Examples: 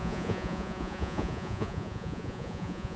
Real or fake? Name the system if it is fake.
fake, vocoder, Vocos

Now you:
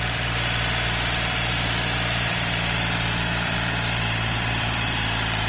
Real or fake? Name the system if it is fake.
fake, vocoder, BigVGAN v2